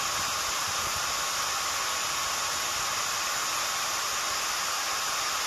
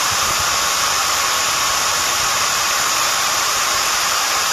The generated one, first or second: second